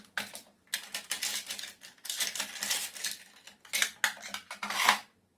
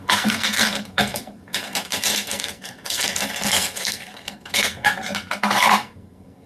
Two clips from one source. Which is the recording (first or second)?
first